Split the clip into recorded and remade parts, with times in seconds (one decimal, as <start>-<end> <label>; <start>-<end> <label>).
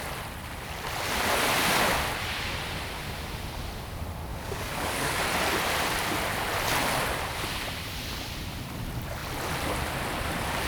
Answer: 0.0-4.3 recorded; 4.3-5.2 remade; 5.2-10.7 recorded